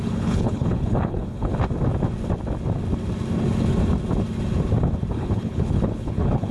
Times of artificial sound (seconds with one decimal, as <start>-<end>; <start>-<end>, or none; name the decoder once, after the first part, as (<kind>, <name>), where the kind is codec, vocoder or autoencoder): 0.0-1.5 (codec, HILCodec); 5.1-6.5